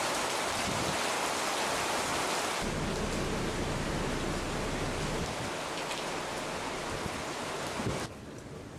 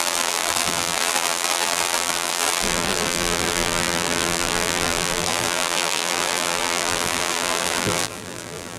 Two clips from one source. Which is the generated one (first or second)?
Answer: second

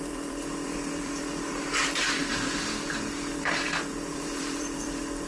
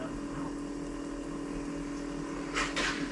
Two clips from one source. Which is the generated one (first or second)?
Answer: first